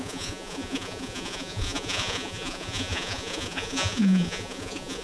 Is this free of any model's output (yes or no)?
no